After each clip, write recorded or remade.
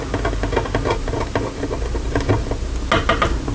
recorded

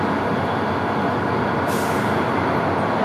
recorded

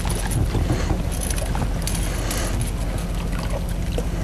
recorded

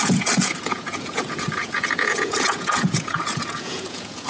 remade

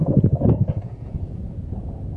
remade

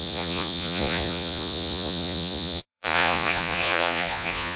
remade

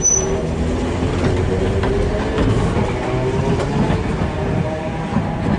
recorded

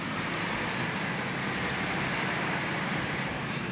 recorded